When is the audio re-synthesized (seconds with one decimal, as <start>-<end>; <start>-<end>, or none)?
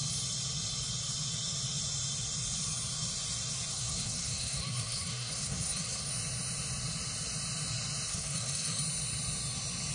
3.7-6.1; 8.1-8.8